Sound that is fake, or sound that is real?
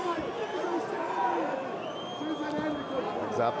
real